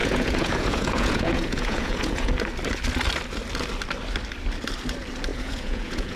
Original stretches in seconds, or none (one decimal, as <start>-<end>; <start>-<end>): 2.3-5.3